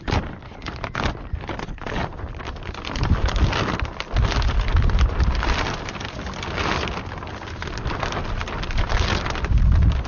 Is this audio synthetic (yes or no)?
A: no